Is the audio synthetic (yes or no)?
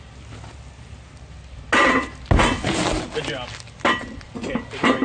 no